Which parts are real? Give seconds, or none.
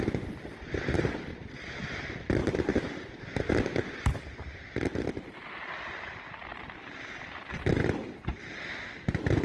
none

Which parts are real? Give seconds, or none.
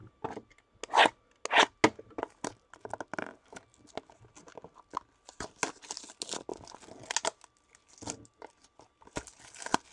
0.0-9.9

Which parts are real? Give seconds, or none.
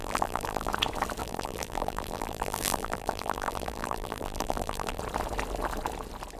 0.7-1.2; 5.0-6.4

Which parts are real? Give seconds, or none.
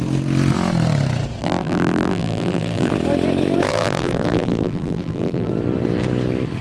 0.0-1.4; 2.9-3.7; 5.5-6.6